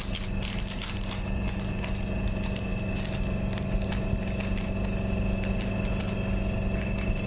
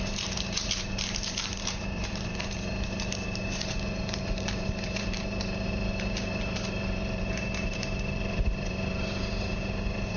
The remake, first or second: second